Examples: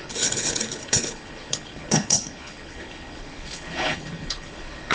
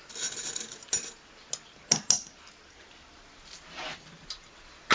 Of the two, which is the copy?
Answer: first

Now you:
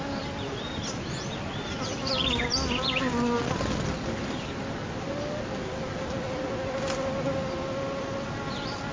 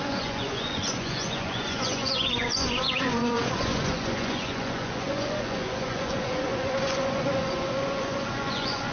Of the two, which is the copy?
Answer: second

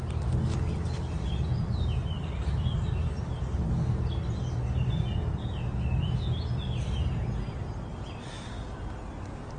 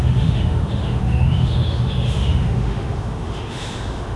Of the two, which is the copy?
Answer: second